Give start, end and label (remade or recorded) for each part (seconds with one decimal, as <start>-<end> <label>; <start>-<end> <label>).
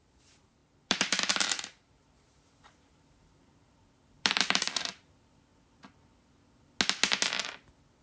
0.0-5.5 remade; 5.5-8.0 recorded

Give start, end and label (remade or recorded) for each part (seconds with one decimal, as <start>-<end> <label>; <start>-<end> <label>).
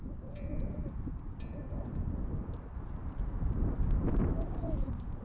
0.0-0.5 remade; 0.5-1.1 recorded; 1.1-5.2 remade